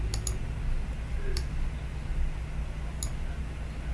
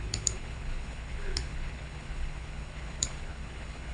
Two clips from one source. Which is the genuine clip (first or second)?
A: first